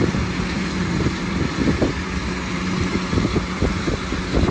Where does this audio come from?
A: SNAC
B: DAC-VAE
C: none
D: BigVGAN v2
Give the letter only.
D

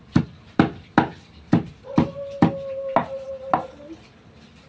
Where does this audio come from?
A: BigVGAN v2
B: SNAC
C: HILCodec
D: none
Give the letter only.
D